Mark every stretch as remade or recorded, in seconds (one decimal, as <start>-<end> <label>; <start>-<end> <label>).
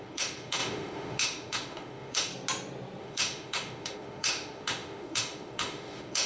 0.0-2.3 remade; 2.3-3.0 recorded; 3.0-6.3 remade